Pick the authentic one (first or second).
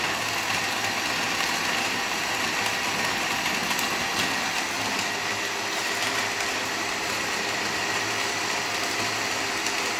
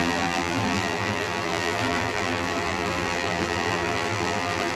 first